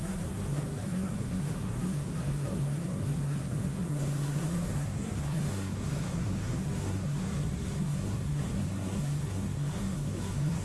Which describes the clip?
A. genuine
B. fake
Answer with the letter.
B